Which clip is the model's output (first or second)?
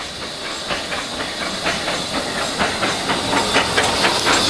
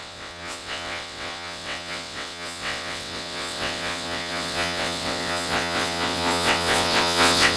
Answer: second